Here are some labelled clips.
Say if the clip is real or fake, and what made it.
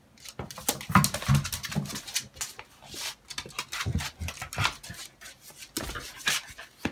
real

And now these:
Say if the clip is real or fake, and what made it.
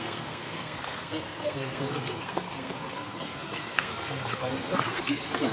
fake, codec, SNAC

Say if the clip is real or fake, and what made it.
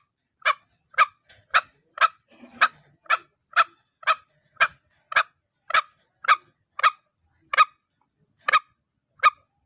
real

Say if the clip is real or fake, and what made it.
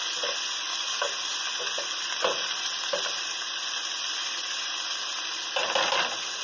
real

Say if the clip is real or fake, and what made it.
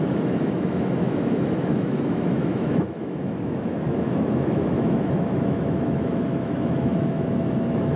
fake, autoencoder, DAC-VAE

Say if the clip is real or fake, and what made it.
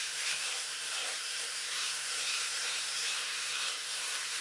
fake, codec, SNAC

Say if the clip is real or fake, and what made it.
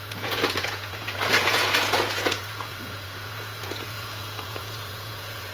fake, vocoder, Vocos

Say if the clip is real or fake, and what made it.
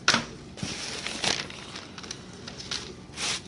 real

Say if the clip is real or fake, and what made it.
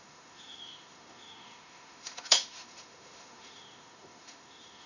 fake, autoencoder, DAC-VAE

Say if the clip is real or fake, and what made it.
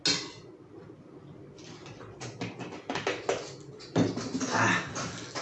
real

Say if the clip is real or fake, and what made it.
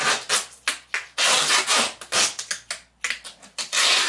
real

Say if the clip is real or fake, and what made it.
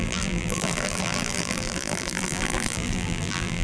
fake, vocoder, BigVGAN v2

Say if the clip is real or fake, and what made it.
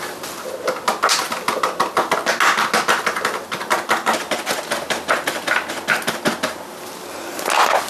real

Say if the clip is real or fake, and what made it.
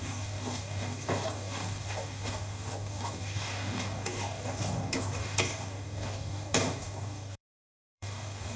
fake, codec, DAC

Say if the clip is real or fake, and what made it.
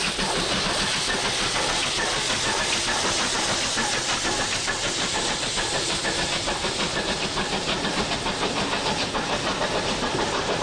real